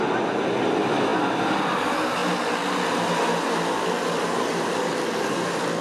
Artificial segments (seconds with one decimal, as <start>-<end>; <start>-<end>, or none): none